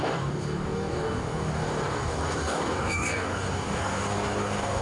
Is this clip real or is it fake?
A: fake